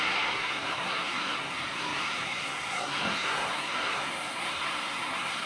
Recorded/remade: remade